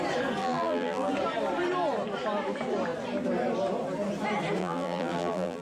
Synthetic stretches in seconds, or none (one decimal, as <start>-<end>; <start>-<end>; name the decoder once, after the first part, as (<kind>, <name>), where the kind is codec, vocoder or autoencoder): 0.4-1.1 (vocoder, BigVGAN v2); 4.6-5.6